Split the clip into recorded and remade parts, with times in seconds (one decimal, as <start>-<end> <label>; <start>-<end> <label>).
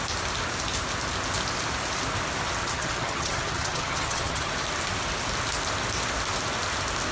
0.0-2.6 recorded; 2.6-4.5 remade; 4.5-7.1 recorded